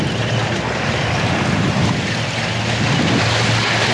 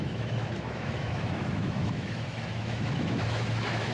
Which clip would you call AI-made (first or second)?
second